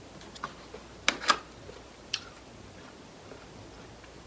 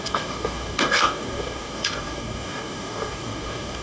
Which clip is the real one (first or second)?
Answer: first